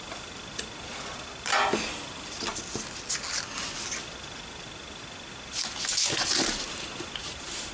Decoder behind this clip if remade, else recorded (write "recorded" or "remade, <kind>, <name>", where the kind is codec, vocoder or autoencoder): recorded